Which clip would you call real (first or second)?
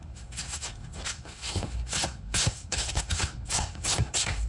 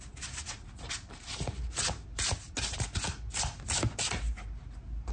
second